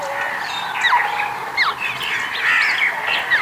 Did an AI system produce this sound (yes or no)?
no